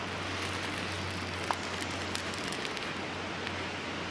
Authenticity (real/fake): real